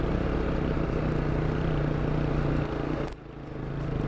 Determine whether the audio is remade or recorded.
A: recorded